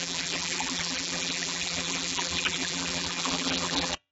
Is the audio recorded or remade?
remade